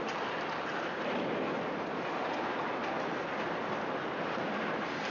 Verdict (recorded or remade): recorded